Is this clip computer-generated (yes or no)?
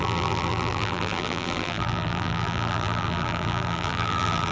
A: yes